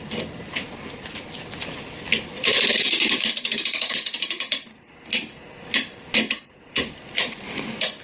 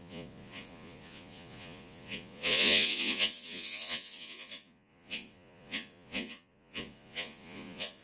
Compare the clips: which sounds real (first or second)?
first